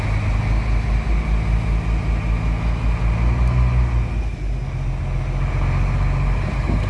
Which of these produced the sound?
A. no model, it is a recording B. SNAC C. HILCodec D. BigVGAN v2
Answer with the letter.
A